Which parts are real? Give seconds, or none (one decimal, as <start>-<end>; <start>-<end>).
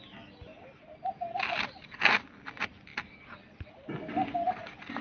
0.0-5.0